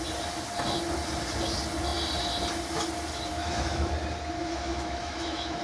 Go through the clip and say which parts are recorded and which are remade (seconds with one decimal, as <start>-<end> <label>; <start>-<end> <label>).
0.0-3.3 recorded; 3.3-3.9 remade; 3.9-4.4 recorded; 4.4-5.6 remade